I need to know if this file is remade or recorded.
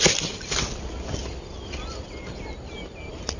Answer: recorded